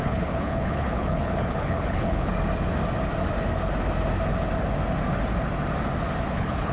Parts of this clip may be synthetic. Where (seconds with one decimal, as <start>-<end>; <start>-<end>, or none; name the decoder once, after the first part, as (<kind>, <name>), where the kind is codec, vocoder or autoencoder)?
0.0-2.3 (codec, HILCodec); 6.3-6.7